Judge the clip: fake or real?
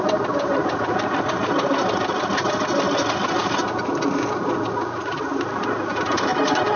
real